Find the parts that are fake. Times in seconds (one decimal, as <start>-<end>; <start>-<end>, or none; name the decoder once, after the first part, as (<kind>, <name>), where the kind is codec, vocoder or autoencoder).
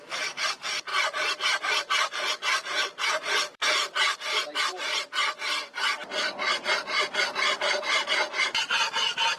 0.0-6.0 (vocoder, BigVGAN v2); 7.2-9.4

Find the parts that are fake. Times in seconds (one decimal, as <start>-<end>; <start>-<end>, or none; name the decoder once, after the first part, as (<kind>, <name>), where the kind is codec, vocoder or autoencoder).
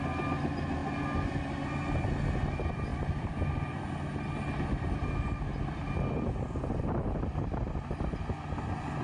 none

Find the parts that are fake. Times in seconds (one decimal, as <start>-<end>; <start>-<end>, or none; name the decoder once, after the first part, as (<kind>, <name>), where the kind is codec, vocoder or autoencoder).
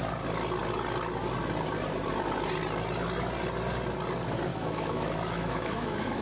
4.5-6.2 (autoencoder, DAC-VAE)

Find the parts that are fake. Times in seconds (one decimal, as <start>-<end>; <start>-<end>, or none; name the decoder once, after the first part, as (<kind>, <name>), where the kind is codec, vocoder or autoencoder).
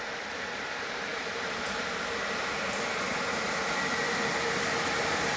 0.0-5.4 (vocoder, BigVGAN v2)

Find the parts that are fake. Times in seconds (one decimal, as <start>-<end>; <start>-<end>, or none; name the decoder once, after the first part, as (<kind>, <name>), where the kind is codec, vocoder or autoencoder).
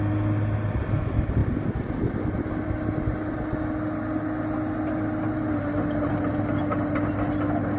none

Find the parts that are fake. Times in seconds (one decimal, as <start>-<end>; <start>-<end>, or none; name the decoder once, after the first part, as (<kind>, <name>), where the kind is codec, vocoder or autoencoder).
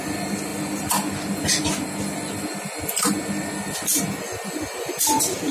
none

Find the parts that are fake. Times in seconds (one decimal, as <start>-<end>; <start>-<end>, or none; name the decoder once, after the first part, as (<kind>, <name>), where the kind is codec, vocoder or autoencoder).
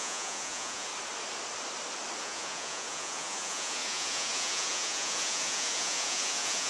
0.0-0.9 (vocoder, Vocos); 2.2-6.7